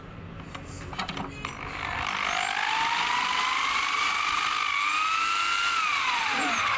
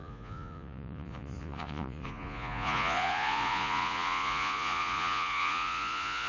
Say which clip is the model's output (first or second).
second